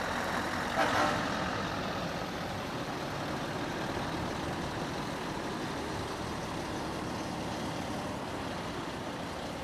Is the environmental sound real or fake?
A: real